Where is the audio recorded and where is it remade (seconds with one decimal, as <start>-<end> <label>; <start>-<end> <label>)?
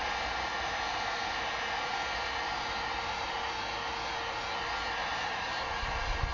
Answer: 0.0-5.0 recorded; 5.0-6.3 remade